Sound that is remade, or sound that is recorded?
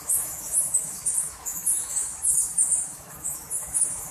remade